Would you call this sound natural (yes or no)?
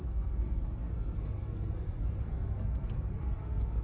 no